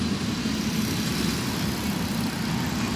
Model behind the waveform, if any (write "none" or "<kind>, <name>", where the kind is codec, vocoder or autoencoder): none